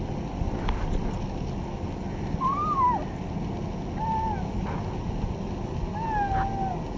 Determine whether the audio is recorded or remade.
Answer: recorded